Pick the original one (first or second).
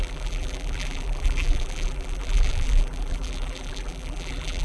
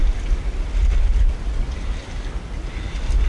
second